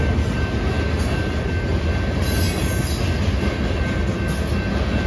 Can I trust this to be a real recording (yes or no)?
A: yes